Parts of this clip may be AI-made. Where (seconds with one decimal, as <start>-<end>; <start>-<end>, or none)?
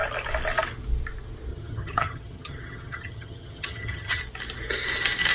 1.5-4.2